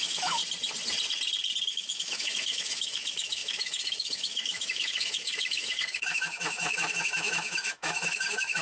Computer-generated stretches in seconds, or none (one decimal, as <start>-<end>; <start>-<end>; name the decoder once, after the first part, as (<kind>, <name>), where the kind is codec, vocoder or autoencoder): 0.0-0.4 (autoencoder, DAC-VAE); 1.7-8.6